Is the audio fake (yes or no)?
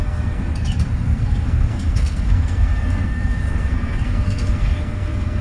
yes